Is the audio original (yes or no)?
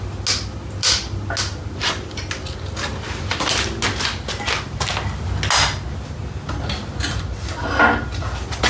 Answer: yes